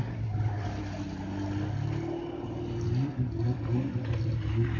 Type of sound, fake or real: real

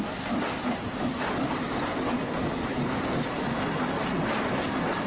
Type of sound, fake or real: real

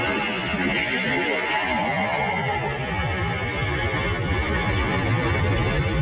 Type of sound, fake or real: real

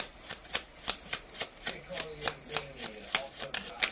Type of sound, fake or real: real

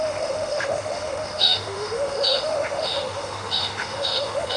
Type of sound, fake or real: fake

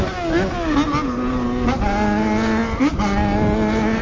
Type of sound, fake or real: real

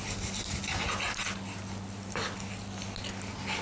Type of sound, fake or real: real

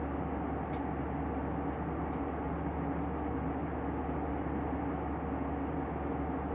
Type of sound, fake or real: real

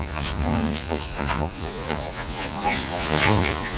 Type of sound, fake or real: fake